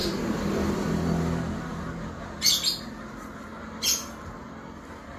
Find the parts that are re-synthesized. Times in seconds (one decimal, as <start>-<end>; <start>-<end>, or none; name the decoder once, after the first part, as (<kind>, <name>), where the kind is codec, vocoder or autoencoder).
0.0-0.9 (vocoder, BigVGAN v2)